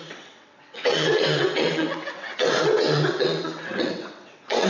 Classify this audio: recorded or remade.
remade